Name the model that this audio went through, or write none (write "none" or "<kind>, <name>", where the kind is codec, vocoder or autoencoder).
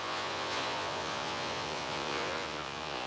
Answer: vocoder, Vocos